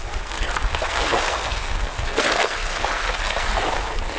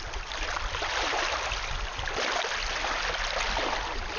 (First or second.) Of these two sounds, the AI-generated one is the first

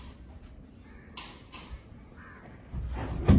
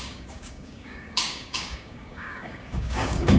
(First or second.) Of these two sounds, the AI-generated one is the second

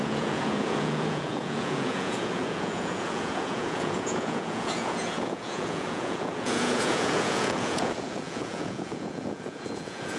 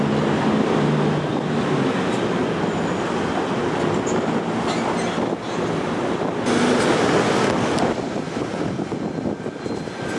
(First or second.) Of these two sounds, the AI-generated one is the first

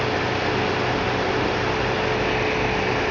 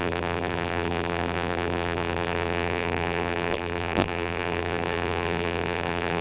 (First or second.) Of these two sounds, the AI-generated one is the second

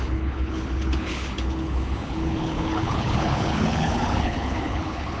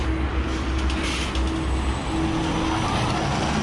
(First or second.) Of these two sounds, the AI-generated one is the first